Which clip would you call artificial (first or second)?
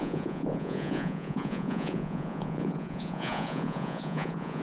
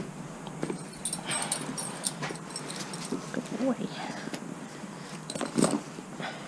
first